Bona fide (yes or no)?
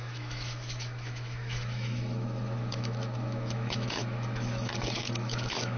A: no